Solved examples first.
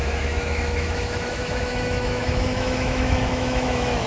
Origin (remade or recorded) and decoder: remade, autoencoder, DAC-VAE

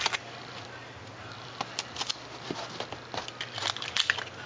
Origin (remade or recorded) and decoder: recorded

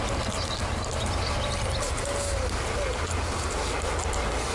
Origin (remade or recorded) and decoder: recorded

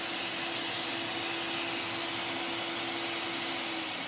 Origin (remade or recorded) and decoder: recorded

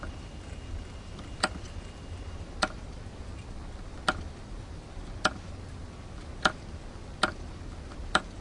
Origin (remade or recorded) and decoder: recorded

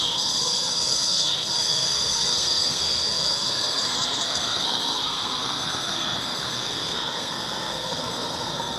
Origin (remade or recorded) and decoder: remade, codec, SNAC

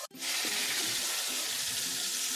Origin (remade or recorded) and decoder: remade, vocoder, BigVGAN v2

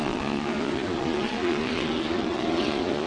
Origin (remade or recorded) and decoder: remade, vocoder, Vocos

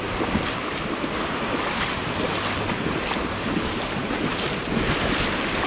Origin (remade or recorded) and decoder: recorded